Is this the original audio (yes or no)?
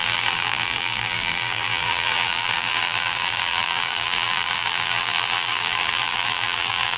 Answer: no